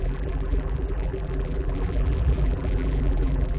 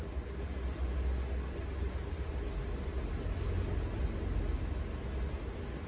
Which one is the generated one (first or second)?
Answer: first